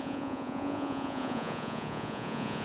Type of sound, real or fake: fake